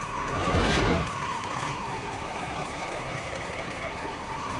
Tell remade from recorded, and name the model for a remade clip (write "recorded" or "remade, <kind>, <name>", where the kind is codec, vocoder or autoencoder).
remade, codec, SNAC